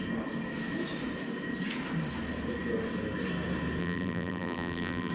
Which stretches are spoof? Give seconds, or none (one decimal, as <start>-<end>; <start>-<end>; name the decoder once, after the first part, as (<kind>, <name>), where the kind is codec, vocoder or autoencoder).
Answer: 3.8-5.1 (vocoder, BigVGAN v2)